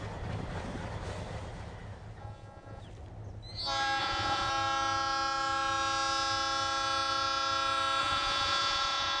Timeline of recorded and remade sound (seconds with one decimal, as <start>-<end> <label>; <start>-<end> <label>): 0.0-2.2 recorded; 2.2-2.8 remade; 2.8-4.0 recorded; 4.0-4.5 remade; 4.5-8.0 recorded; 8.0-9.2 remade